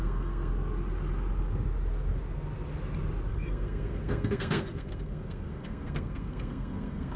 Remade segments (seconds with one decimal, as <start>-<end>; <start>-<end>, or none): 0.0-0.5; 3.3-7.2